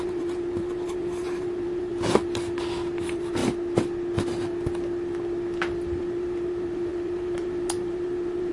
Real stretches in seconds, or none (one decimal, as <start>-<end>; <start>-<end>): 1.9-3.0; 3.4-6.0